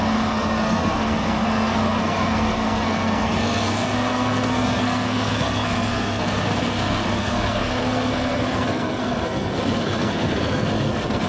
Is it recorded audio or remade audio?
remade